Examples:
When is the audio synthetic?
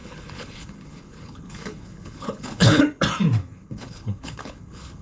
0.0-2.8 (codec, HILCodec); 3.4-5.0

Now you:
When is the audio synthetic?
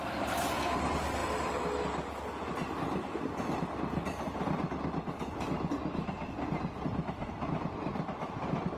none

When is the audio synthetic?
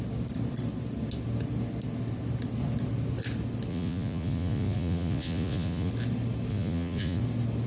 3.7-5.9 (vocoder, Vocos); 6.5-7.2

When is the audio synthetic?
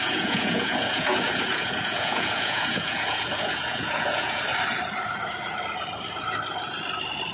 0.0-4.4 (vocoder, Vocos)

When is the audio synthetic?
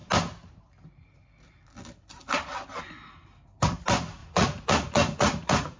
4.2-5.8 (vocoder, Vocos)